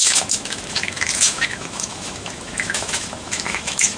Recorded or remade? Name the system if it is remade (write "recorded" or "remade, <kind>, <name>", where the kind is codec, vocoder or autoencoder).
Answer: remade, autoencoder, DAC-VAE